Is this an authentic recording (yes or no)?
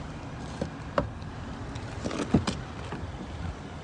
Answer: yes